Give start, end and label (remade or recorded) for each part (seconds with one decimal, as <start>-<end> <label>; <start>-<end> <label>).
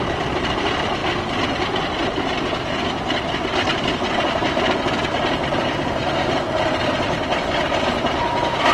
0.0-3.7 recorded; 3.7-6.4 remade; 6.4-8.7 recorded